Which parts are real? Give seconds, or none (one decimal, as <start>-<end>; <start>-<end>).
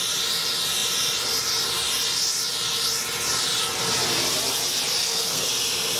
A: 0.0-5.0; 5.5-6.0